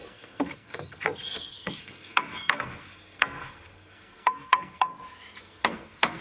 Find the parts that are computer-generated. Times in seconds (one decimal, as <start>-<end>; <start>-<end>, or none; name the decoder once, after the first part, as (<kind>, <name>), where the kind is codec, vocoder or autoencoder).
0.0-4.9 (codec, SNAC); 5.4-6.2